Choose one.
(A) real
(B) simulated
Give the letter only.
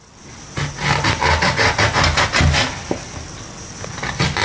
A